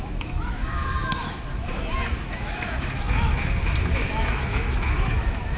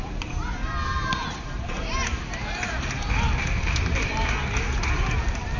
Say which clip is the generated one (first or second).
first